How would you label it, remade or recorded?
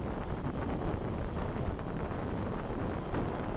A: recorded